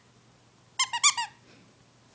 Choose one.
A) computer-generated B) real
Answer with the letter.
B